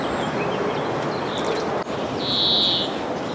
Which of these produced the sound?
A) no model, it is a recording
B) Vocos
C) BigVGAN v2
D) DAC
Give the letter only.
A